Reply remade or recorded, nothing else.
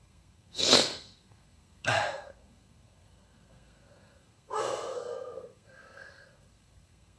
remade